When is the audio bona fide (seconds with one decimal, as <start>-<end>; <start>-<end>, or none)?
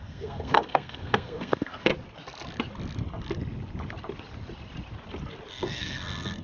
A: 1.9-5.5